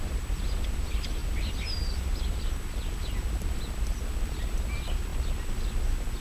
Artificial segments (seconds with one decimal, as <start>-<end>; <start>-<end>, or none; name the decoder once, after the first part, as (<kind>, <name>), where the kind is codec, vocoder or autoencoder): none